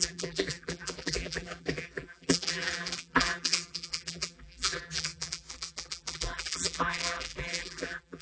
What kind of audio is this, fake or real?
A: fake